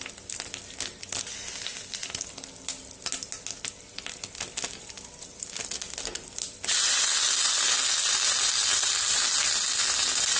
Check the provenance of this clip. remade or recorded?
recorded